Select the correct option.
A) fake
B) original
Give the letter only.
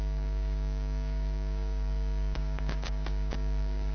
A